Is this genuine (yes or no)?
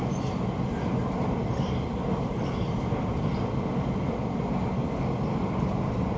yes